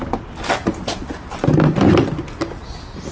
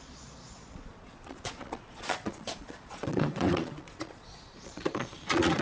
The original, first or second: first